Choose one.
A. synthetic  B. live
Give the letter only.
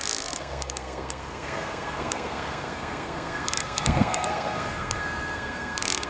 A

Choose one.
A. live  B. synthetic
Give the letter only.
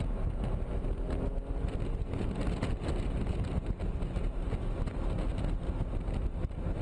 A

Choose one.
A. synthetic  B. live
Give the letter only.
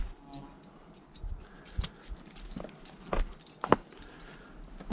B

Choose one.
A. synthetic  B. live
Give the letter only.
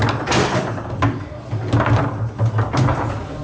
B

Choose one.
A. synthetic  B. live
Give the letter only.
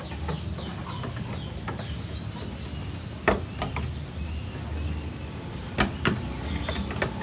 B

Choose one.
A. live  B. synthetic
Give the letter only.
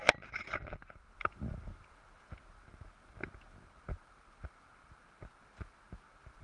A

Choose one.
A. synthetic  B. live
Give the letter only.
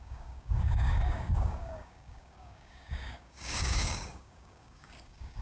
A